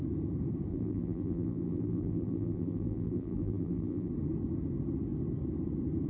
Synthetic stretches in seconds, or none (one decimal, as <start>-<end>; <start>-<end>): 0.7-4.1